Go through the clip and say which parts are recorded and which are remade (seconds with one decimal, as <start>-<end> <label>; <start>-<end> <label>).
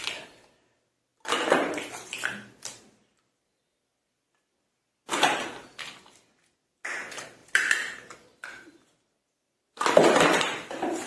0.0-1.1 recorded; 1.1-3.5 remade; 3.5-7.4 recorded; 7.4-7.9 remade; 7.9-11.1 recorded